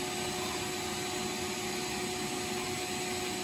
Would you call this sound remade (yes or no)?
no